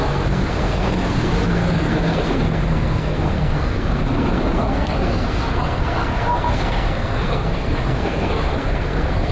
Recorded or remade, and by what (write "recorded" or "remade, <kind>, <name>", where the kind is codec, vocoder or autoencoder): remade, codec, SNAC